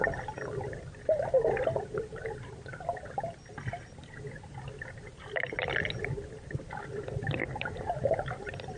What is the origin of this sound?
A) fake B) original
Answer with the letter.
B